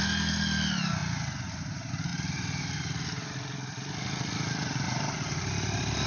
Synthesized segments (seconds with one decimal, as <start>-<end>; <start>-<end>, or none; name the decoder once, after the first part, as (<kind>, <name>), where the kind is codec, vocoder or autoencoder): none